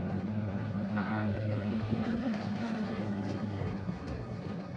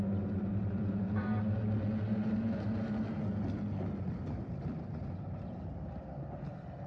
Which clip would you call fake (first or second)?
first